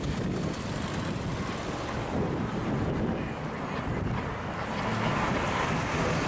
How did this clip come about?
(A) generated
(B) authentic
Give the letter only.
B